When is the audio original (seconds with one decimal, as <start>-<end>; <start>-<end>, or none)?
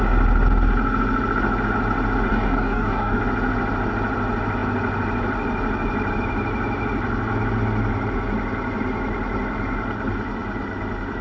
0.0-2.3; 3.2-11.2